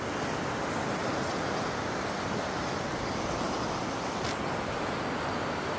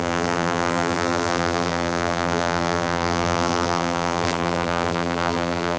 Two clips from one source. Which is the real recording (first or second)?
first